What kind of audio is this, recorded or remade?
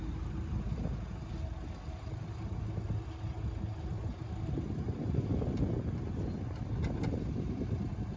recorded